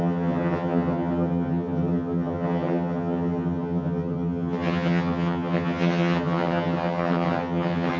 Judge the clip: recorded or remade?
remade